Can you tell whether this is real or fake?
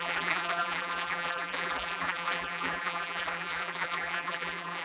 fake